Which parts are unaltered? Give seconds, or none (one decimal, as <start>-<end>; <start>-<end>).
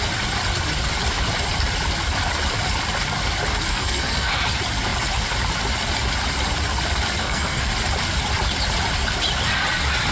0.0-3.7; 4.3-7.2; 7.7-10.1